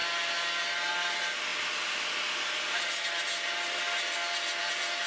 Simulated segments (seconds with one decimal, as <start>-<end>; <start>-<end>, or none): none